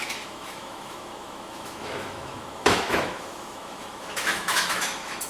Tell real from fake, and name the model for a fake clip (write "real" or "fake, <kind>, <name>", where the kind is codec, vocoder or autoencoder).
fake, autoencoder, DAC-VAE